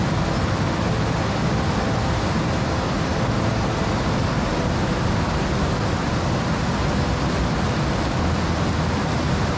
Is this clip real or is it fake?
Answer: real